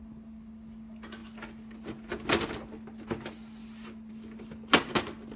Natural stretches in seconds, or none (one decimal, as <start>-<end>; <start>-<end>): 0.0-5.4